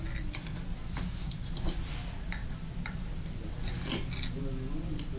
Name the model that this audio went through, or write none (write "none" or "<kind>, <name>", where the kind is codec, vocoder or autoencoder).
none